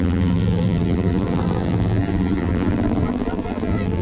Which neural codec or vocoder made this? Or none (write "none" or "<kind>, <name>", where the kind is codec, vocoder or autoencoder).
vocoder, BigVGAN v2